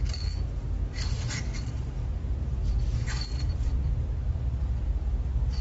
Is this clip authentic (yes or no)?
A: yes